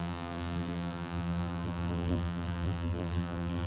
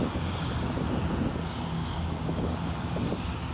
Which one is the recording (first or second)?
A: second